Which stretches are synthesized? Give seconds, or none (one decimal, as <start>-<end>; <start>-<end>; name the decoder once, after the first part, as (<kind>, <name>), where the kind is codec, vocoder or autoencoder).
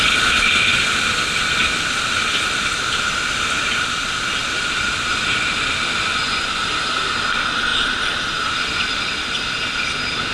6.1-6.6 (vocoder, Vocos)